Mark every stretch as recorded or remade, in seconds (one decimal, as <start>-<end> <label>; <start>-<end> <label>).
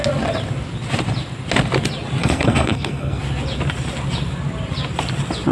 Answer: 0.0-2.2 recorded; 2.2-3.2 remade; 3.2-5.5 recorded